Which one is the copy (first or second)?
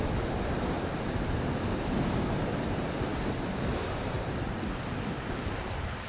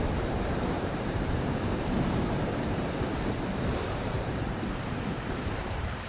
second